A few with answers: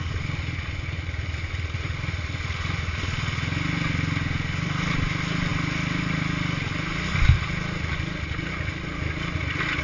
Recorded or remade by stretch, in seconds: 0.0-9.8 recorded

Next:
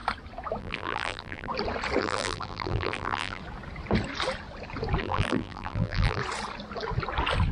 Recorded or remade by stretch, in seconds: 0.0-0.6 recorded; 0.6-1.5 remade; 1.5-2.0 recorded; 2.0-3.4 remade; 3.4-5.0 recorded; 5.0-6.2 remade; 6.2-7.5 recorded